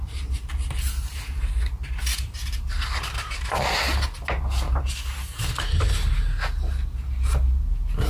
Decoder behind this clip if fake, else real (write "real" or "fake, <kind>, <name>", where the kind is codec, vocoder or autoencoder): real